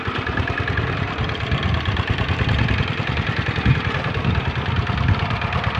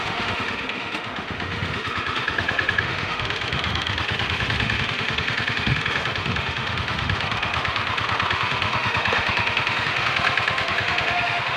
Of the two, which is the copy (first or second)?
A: second